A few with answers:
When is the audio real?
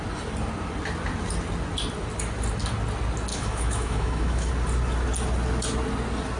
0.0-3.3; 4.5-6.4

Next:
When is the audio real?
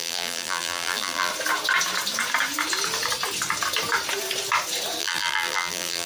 1.3-5.0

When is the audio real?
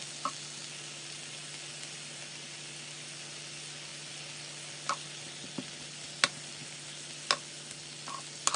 0.0-8.6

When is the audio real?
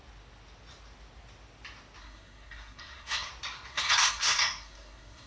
0.0-2.0; 3.3-3.7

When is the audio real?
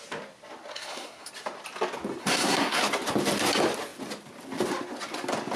0.0-0.7; 1.3-2.2; 2.8-5.6